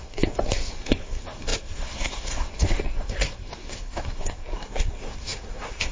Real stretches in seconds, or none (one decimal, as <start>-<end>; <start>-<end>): none